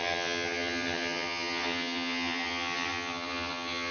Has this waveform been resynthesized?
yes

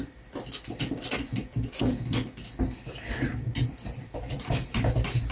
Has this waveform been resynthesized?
no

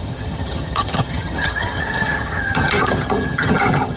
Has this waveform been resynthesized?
yes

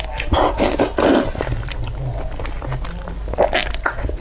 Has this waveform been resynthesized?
no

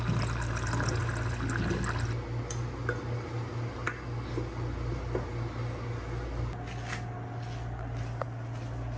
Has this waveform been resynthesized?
no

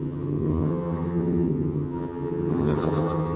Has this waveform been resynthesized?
yes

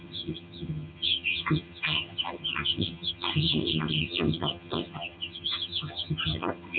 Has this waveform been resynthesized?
yes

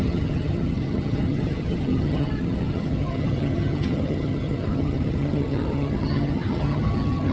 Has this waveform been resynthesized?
yes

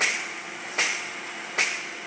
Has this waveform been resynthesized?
no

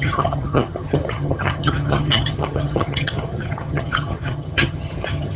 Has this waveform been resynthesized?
yes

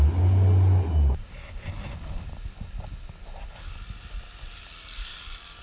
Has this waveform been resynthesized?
no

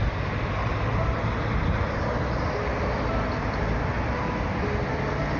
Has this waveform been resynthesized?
no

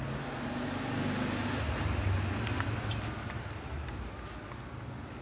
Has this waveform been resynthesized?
no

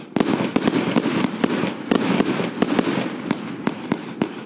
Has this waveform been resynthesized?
no